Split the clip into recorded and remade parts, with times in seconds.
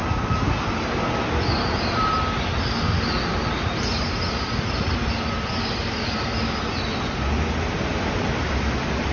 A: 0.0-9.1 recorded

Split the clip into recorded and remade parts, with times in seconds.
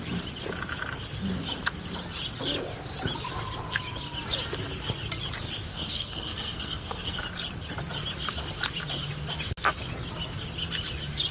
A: 0.0-5.7 recorded; 5.7-7.2 remade; 7.2-11.3 recorded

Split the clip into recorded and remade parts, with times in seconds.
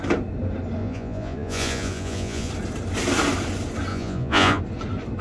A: 0.0-0.8 recorded; 0.8-2.5 remade; 2.5-3.9 recorded; 3.9-4.6 remade; 4.6-5.2 recorded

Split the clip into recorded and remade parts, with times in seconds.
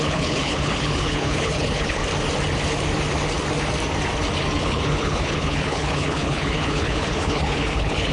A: 0.0-2.0 remade; 2.0-4.6 recorded; 4.6-8.1 remade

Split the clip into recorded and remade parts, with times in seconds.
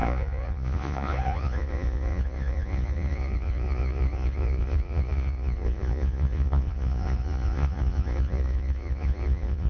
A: 0.0-9.7 remade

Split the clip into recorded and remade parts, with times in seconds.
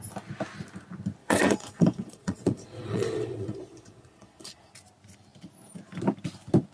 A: 0.0-1.2 recorded; 1.2-4.7 remade; 4.7-6.7 recorded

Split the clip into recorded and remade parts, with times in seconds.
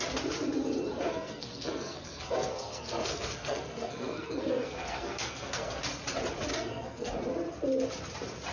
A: 0.0-1.1 recorded; 1.1-5.8 remade; 5.8-6.5 recorded; 6.5-7.1 remade; 7.1-8.5 recorded